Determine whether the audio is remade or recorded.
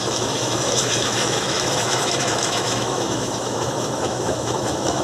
remade